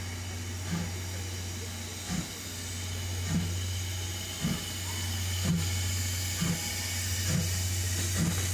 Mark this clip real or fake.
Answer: real